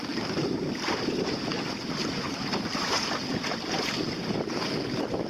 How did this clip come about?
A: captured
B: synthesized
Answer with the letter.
A